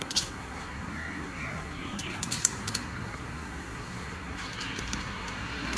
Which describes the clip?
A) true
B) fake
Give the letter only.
B